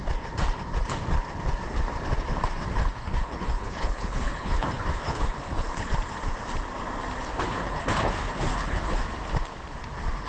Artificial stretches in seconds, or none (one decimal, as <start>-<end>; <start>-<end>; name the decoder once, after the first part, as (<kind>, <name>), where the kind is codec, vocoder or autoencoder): 2.8-5.9 (codec, HILCodec); 7.3-9.0